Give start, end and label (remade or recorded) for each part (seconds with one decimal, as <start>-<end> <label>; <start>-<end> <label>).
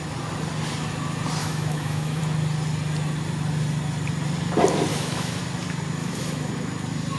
0.0-1.4 recorded; 1.4-2.2 remade; 2.2-4.9 recorded; 4.9-5.4 remade; 5.4-6.0 recorded; 6.0-6.5 remade; 6.5-7.2 recorded